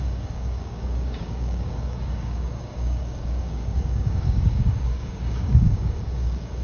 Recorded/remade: remade